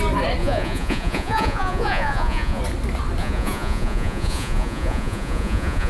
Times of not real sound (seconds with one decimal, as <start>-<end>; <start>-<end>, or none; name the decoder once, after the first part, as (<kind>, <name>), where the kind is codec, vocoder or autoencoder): 0.4-2.6 (vocoder, Vocos); 3.2-5.9